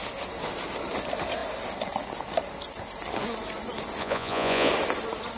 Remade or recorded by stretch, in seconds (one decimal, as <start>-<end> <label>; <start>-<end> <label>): 0.0-4.0 recorded; 4.0-4.7 remade; 4.7-5.4 recorded